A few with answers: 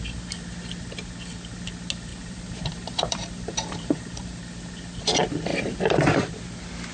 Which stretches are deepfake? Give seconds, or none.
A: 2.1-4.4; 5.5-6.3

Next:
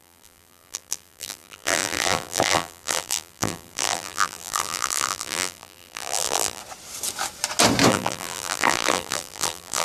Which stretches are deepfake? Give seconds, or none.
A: 0.0-6.6; 7.9-9.8